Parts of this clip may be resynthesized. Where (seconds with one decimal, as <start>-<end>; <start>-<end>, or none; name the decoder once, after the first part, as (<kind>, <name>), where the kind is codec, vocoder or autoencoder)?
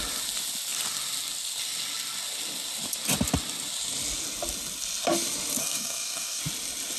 5.6-6.4 (codec, DAC)